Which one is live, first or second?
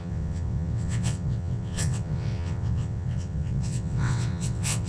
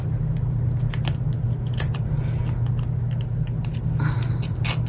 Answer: second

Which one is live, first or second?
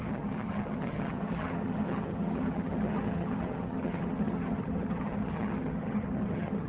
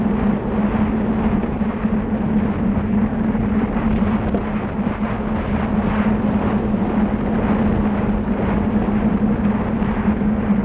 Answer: second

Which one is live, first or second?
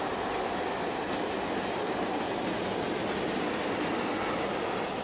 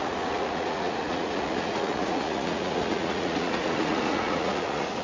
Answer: first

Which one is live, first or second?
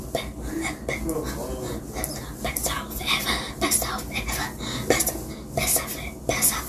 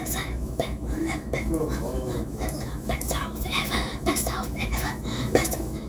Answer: first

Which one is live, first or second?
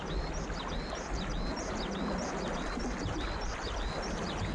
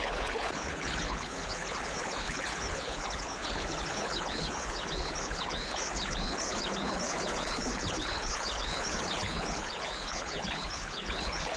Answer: first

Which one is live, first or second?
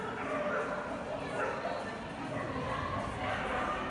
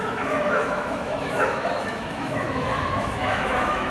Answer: first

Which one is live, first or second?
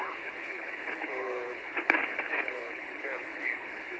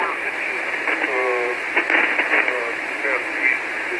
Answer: second